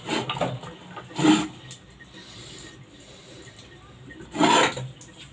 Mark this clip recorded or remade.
recorded